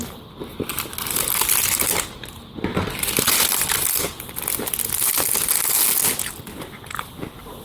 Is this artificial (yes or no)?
no